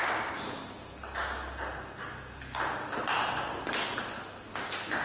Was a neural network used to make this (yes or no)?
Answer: no